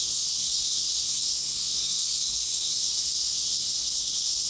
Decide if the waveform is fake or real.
fake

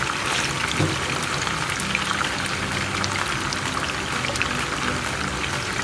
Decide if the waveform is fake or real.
real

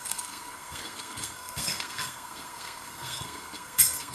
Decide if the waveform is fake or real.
fake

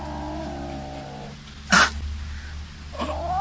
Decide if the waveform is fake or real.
real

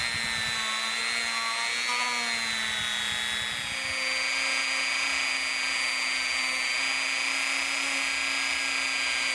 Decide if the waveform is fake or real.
real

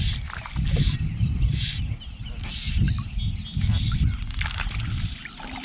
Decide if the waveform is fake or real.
real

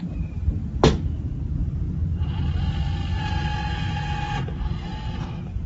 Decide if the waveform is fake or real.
real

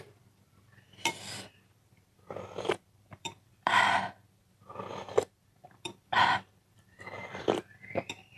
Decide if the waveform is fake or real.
fake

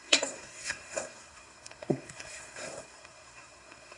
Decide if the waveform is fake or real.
fake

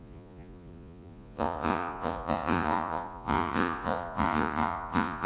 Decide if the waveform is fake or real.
fake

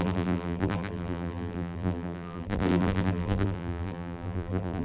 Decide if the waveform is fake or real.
fake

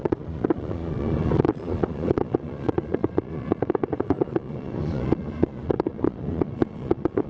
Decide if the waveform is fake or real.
fake